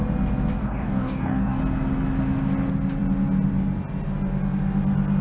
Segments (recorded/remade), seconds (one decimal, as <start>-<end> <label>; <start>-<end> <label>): 0.0-0.6 recorded; 0.6-1.6 remade; 1.6-5.2 recorded